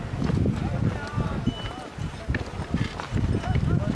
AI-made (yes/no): no